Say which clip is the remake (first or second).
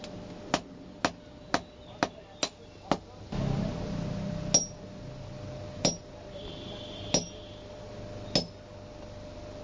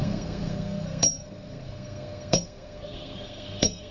second